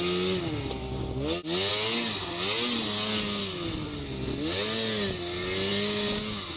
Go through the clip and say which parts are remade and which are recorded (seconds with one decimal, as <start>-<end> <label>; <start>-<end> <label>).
0.0-6.6 recorded